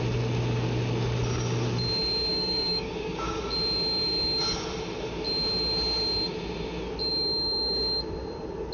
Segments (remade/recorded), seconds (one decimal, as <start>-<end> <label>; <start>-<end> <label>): 0.0-2.3 recorded; 2.3-3.4 remade; 3.4-8.7 recorded